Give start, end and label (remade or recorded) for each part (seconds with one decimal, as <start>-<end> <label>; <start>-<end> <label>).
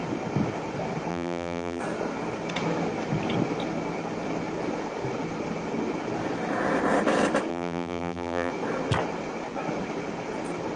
0.0-1.1 recorded; 1.1-1.8 remade; 1.8-7.5 recorded; 7.5-8.5 remade; 8.5-10.8 recorded